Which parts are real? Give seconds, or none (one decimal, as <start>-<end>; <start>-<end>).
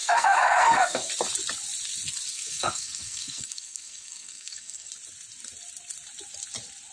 1.1-2.3; 4.9-6.9